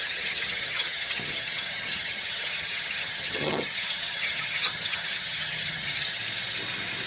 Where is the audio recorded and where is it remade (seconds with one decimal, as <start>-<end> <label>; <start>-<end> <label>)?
0.0-6.2 remade; 6.2-7.1 recorded